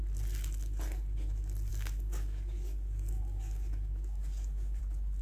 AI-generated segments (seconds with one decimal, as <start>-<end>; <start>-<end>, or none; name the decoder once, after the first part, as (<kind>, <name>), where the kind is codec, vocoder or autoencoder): 1.7-4.8 (codec, DAC)